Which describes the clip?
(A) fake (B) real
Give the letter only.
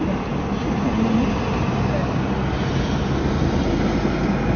B